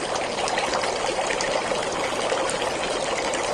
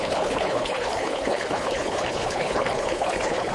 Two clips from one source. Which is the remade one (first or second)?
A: second